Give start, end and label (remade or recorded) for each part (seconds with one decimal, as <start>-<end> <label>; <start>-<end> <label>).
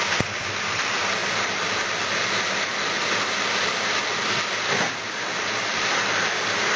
0.0-1.2 remade; 1.2-4.9 recorded; 4.9-6.8 remade